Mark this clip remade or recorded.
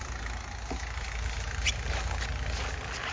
recorded